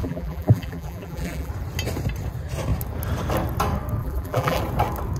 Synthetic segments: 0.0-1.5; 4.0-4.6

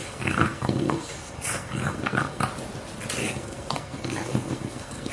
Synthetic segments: 0.0-2.4; 3.2-5.1

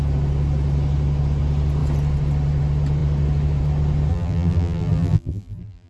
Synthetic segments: 4.1-5.9